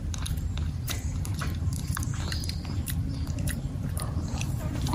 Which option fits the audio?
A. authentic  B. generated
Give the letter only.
B